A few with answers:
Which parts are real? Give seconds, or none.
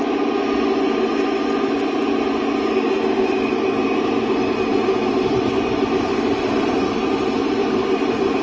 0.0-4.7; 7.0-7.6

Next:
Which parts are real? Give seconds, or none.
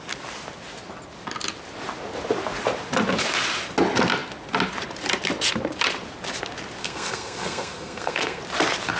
0.0-6.8; 8.4-9.0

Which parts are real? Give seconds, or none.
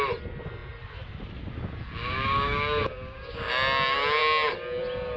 0.0-2.0; 3.5-5.2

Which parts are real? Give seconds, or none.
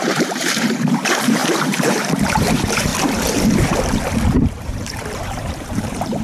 2.9-4.6